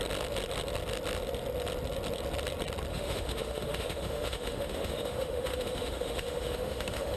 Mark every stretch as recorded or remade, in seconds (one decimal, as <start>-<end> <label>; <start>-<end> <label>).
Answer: 0.0-2.9 recorded; 2.9-7.2 remade